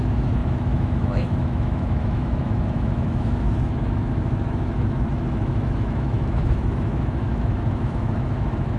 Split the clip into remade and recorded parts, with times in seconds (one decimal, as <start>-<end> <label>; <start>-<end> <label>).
0.0-8.8 remade